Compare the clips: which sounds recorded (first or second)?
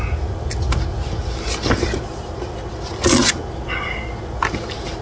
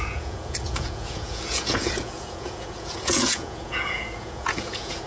first